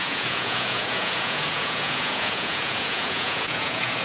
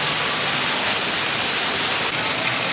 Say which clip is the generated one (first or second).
first